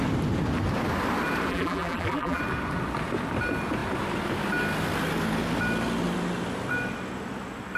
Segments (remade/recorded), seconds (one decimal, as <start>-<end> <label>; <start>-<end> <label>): 0.0-1.5 recorded; 1.5-2.4 remade; 2.4-7.8 recorded